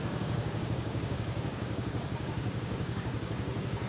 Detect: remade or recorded remade